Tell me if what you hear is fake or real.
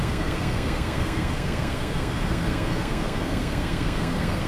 fake